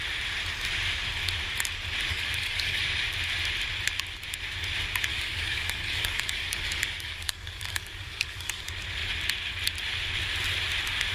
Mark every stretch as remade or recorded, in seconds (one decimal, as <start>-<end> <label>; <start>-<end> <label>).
0.0-2.1 recorded; 2.1-2.8 remade; 2.8-5.1 recorded; 5.1-8.6 remade; 8.6-11.1 recorded